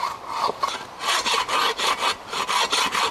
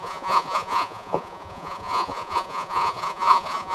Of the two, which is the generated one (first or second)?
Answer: second